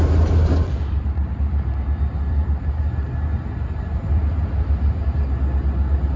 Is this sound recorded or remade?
recorded